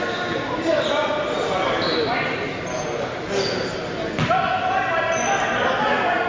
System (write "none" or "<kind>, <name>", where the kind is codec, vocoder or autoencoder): none